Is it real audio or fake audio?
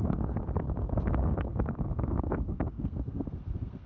fake